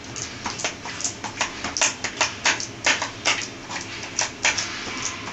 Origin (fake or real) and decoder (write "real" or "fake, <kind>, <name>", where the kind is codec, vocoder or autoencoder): real